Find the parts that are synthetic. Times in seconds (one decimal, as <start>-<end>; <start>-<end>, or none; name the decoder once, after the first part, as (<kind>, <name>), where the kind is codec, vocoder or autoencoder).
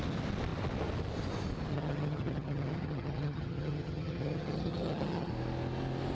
1.7-5.3 (vocoder, HiFi-GAN)